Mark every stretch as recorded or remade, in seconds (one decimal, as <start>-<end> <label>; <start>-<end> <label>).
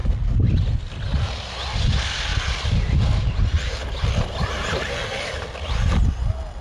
0.0-6.6 recorded